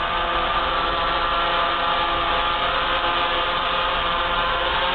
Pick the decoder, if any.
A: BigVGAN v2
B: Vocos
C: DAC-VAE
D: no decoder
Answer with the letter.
D